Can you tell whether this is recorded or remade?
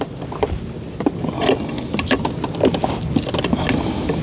recorded